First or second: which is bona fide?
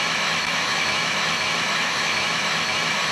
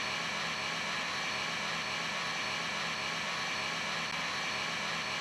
second